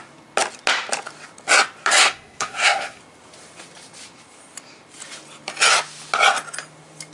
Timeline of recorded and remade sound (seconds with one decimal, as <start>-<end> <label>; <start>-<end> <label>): 0.0-2.0 recorded; 2.0-3.0 remade; 3.0-7.1 recorded